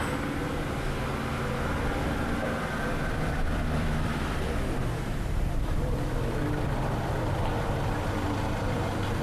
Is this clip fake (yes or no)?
yes